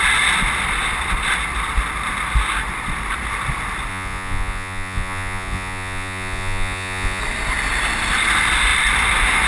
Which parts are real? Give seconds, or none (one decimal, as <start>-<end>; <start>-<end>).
0.0-3.9; 7.2-9.5